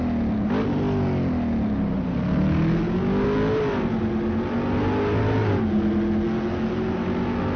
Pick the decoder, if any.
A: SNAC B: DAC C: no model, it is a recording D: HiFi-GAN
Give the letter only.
C